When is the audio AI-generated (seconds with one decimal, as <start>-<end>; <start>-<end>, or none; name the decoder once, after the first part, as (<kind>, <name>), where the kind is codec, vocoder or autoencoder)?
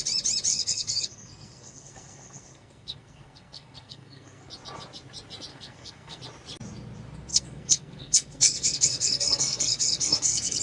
0.5-4.5 (codec, SNAC); 5.5-6.2; 7.3-10.6